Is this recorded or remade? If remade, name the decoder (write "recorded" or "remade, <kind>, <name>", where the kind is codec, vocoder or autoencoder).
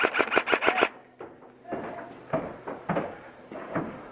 recorded